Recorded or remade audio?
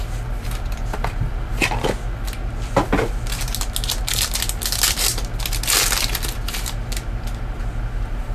recorded